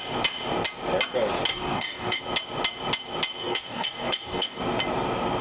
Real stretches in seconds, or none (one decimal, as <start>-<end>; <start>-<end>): 0.0-1.5; 2.2-3.4; 4.6-5.4

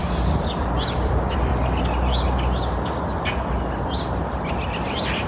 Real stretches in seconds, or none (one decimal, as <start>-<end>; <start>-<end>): 1.5-4.7